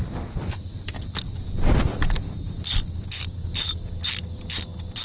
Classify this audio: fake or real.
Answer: real